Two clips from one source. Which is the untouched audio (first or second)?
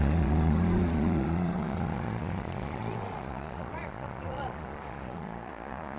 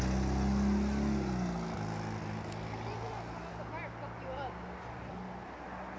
second